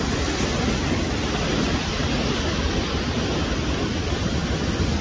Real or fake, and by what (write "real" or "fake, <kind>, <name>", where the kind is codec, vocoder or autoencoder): real